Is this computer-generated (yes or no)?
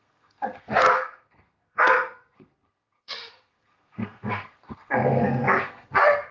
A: yes